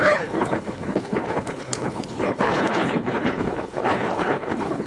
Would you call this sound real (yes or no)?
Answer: no